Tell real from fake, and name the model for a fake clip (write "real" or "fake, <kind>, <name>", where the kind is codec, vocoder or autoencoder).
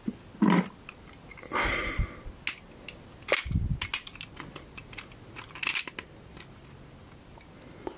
real